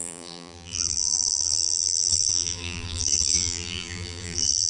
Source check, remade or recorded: remade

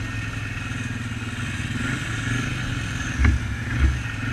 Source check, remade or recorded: recorded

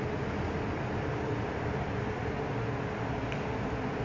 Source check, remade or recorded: recorded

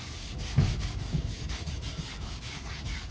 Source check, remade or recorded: remade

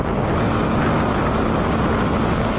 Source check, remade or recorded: recorded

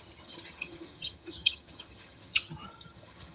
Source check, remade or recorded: remade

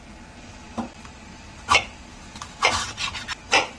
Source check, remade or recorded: remade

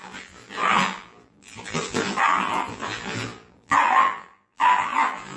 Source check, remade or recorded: remade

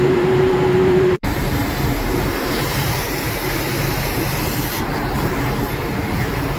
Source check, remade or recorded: remade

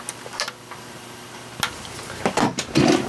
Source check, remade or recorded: recorded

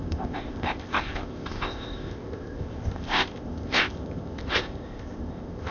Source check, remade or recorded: remade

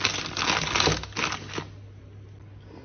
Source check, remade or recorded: recorded